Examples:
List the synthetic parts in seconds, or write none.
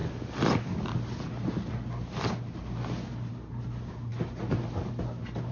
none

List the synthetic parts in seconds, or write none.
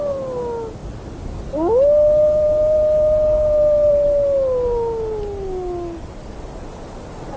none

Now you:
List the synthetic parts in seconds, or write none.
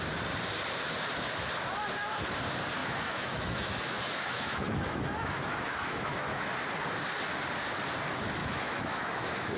2.8-6.5 (autoencoder, DAC-VAE); 8.4-9.6